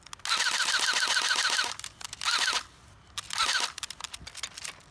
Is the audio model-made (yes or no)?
no